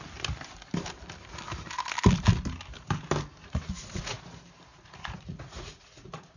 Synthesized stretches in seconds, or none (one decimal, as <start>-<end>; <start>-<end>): 3.4-4.2; 4.7-6.4